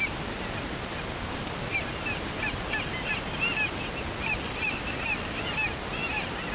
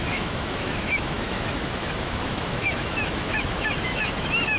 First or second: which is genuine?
first